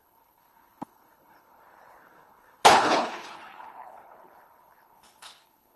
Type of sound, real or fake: fake